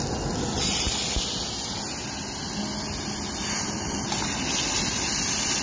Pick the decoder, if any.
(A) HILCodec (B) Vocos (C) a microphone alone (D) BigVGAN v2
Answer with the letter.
C